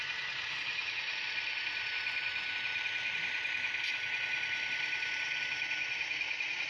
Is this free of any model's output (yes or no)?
yes